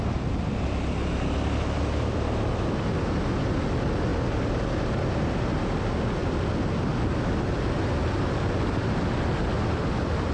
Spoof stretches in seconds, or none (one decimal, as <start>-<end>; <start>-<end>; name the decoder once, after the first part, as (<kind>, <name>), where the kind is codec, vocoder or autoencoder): none